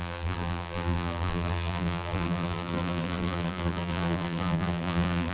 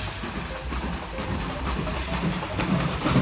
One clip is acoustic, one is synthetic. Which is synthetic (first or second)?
first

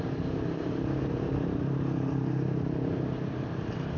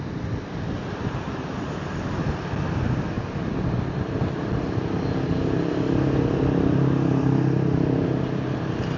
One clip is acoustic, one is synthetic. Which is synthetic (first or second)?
first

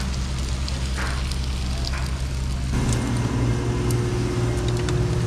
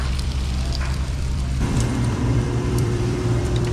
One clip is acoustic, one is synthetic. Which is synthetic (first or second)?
second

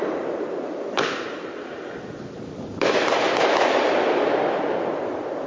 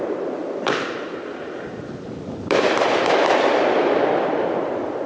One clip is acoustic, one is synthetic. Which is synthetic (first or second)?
second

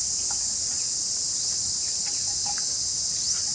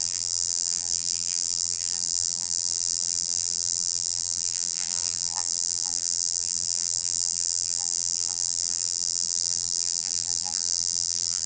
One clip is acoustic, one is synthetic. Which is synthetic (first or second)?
second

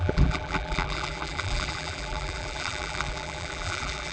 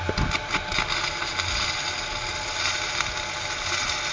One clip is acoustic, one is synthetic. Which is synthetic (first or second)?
first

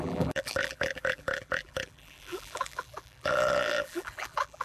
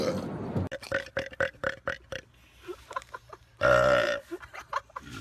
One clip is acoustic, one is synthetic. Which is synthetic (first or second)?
first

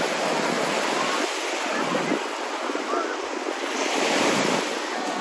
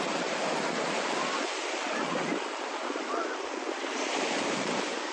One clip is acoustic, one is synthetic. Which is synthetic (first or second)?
second